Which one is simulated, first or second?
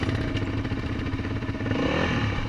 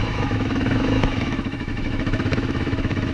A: second